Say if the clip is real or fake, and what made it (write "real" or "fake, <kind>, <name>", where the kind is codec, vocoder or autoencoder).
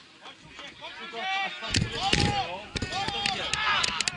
real